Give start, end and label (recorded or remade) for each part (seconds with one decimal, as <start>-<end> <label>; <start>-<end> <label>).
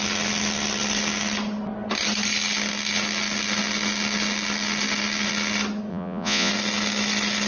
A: 0.0-5.9 recorded; 5.9-6.5 remade; 6.5-7.5 recorded